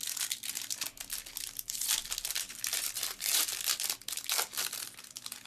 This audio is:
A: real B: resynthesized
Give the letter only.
A